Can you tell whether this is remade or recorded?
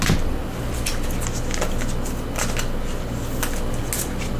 recorded